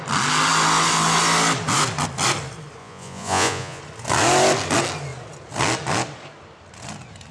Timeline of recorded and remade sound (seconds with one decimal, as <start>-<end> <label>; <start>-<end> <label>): 0.0-2.8 recorded; 2.8-3.8 remade; 3.8-7.3 recorded